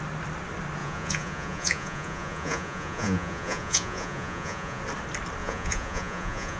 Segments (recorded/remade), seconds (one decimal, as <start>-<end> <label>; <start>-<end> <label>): 0.0-0.8 recorded; 0.8-4.8 remade; 4.8-5.4 recorded; 5.4-6.6 remade